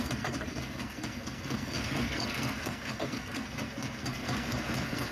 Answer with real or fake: fake